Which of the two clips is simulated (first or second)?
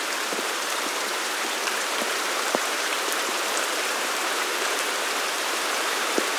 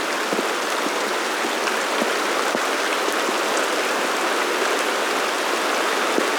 first